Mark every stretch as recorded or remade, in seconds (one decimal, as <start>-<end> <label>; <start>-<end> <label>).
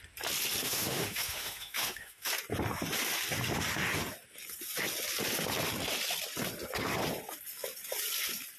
0.0-0.6 recorded; 0.6-2.3 remade; 2.3-8.6 recorded